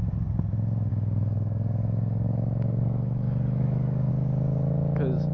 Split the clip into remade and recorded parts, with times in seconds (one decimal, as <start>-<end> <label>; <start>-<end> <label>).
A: 0.0-0.9 recorded; 0.9-4.1 remade; 4.1-5.3 recorded